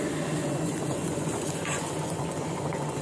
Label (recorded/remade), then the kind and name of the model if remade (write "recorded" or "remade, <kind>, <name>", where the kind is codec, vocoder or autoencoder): remade, vocoder, Vocos